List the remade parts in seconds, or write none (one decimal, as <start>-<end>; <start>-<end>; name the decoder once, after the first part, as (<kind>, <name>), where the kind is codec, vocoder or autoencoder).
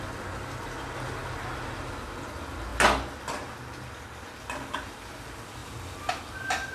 none